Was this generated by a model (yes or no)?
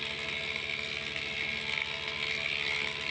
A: no